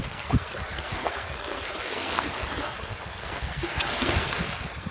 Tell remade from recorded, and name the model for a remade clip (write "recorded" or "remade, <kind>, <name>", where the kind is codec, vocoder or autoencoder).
remade, codec, SNAC